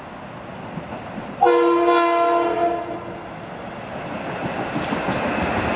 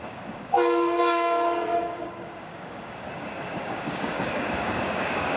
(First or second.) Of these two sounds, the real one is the first